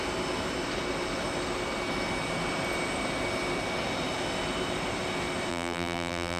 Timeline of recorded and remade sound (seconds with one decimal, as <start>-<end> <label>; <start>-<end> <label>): 0.0-5.5 recorded; 5.5-6.4 remade